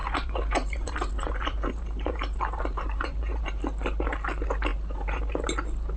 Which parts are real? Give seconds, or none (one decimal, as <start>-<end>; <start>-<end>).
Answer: 3.6-4.7; 5.2-6.0